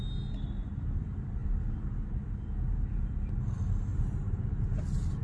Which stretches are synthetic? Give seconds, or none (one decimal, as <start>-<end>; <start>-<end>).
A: 1.4-1.9; 3.9-4.6